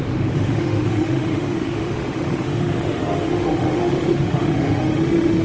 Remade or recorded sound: remade